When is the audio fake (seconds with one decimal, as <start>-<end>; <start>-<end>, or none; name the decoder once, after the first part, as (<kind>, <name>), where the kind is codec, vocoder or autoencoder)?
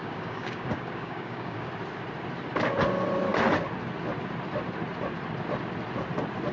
0.0-1.7 (codec, DAC)